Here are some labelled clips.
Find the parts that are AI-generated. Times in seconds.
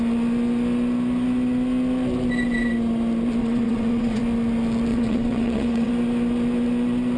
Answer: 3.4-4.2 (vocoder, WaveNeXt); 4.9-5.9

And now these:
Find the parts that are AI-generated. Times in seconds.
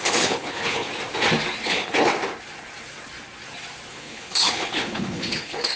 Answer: 0.0-0.9 (codec, HILCodec); 1.6-2.1; 3.9-5.8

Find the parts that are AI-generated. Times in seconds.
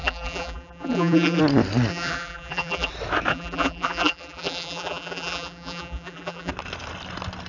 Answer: 0.0-1.4 (vocoder, BigVGAN v2); 1.9-2.9; 3.3-6.5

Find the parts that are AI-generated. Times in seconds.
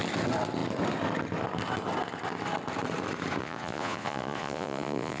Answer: 3.4-5.2 (vocoder, Vocos)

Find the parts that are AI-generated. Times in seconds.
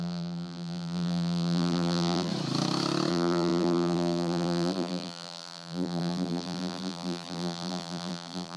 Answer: 0.0-2.3 (vocoder, BigVGAN v2); 3.1-8.6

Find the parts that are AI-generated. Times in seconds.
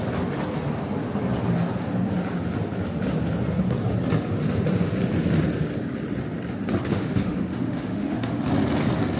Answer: 6.9-8.4 (autoencoder, DAC-VAE)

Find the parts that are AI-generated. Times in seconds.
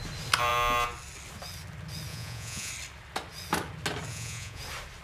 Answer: 2.1-2.7 (vocoder, Vocos); 4.1-4.6